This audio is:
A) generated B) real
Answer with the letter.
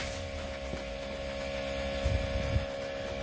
B